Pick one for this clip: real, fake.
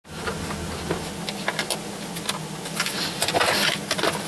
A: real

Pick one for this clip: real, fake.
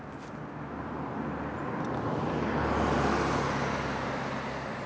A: real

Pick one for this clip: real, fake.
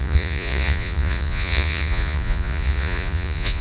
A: fake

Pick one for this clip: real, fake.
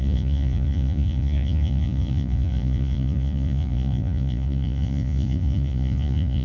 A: fake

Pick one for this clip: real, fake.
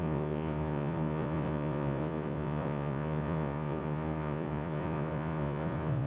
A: fake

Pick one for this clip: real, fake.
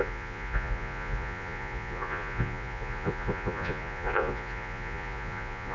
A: fake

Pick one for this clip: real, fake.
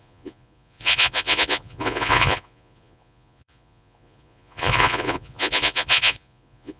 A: fake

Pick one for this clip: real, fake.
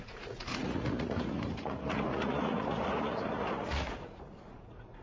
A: fake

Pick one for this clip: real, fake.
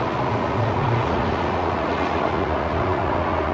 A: fake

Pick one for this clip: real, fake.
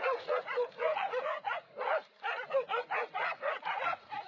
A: fake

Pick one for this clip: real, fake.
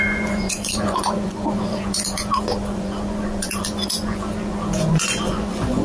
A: fake